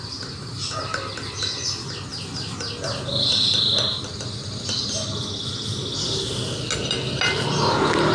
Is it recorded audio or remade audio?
recorded